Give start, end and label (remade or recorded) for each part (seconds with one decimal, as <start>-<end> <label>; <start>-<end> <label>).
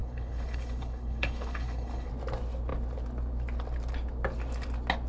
0.0-2.1 remade; 2.1-5.1 recorded